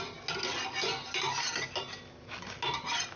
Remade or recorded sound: recorded